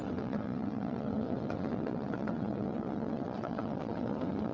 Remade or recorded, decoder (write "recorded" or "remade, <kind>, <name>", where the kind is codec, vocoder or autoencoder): remade, vocoder, WaveNeXt